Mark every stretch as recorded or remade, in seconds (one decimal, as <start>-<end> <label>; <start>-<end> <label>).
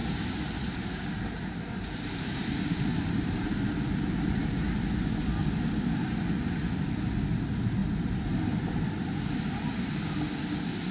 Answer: 0.0-3.6 remade; 3.6-10.9 recorded